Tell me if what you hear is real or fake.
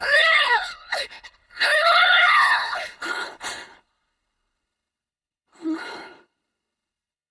fake